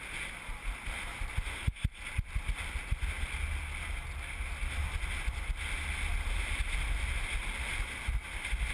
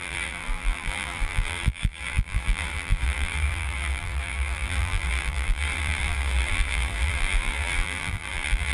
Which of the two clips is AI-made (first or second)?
second